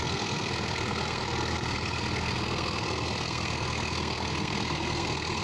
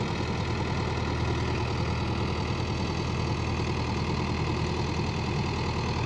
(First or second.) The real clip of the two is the second